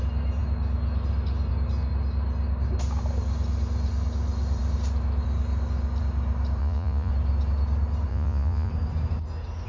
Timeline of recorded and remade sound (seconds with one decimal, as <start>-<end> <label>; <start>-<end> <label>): 0.0-6.6 recorded; 6.6-7.1 remade; 7.1-8.1 recorded; 8.1-8.7 remade; 8.7-9.7 recorded